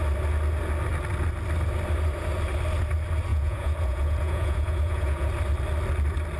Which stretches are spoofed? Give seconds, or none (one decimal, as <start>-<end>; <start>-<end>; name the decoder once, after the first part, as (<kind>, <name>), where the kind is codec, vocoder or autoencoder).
3.3-5.3 (vocoder, Vocos)